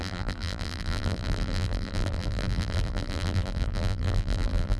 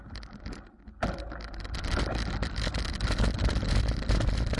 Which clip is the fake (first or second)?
first